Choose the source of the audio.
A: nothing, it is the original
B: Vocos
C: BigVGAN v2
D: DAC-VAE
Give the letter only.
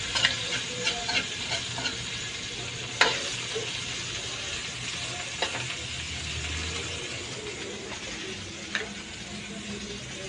A